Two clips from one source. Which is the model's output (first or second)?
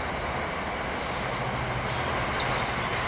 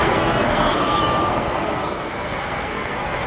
second